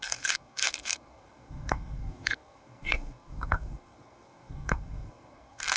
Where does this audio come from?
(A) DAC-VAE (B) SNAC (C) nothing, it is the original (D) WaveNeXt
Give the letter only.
B